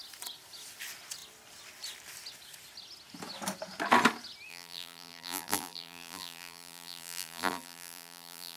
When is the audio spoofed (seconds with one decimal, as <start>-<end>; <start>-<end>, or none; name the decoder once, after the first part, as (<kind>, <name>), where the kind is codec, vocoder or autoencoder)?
4.5-8.6 (vocoder, BigVGAN v2)